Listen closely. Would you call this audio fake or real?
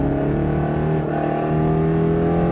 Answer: real